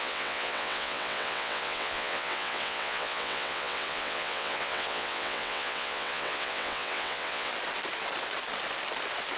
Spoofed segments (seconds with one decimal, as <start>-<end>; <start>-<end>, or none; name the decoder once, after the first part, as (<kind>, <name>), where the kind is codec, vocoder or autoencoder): 0.0-7.5 (vocoder, WaveNeXt)